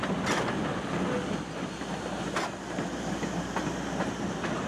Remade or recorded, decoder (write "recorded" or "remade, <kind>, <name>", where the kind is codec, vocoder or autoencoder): recorded